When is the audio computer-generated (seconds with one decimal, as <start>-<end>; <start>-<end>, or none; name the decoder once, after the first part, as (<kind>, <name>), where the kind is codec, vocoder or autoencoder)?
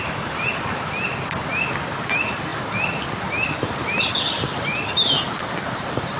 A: none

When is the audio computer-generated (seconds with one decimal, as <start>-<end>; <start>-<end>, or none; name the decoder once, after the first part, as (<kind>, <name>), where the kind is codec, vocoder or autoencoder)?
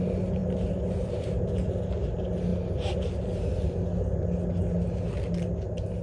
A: none